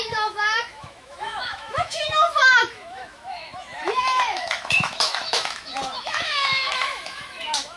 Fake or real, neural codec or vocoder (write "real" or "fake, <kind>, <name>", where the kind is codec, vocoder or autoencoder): fake, autoencoder, DAC-VAE